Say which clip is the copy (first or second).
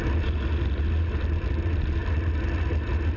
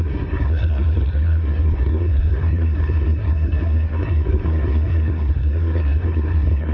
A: second